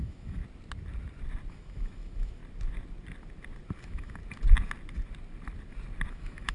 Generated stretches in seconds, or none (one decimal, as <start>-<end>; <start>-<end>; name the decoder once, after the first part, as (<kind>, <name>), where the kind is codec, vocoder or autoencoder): 0.0-0.4 (autoencoder, DAC-VAE); 1.5-2.4; 3.8-4.2; 6.1-6.5

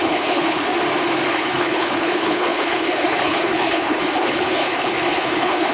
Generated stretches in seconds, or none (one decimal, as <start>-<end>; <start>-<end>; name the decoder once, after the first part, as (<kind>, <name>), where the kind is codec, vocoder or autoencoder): 0.0-0.7 (codec, HILCodec); 1.3-5.7

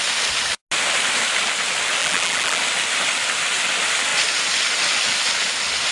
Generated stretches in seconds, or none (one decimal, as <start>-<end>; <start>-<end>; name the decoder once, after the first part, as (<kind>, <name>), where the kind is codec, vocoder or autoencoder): 2.0-2.6 (vocoder, BigVGAN v2)